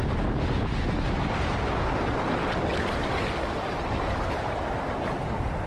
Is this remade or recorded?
recorded